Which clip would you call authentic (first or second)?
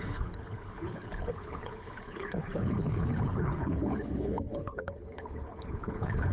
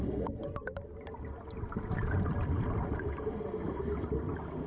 second